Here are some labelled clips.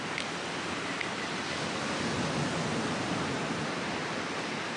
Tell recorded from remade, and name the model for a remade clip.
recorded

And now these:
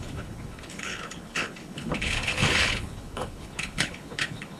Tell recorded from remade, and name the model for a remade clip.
remade, codec, HILCodec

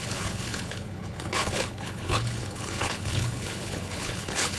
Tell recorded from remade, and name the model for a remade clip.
remade, codec, HILCodec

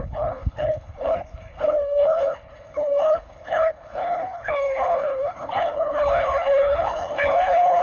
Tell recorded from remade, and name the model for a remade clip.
remade, codec, HILCodec